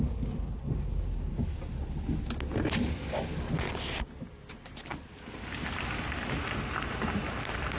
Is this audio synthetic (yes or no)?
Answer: no